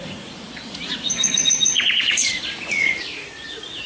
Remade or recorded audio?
remade